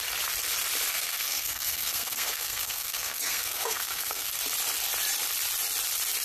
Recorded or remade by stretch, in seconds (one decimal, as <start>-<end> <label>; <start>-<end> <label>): 0.0-0.9 recorded; 0.9-4.3 remade; 4.3-6.2 recorded